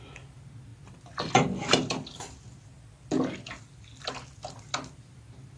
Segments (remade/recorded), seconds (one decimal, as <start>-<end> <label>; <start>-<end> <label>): 0.0-5.6 recorded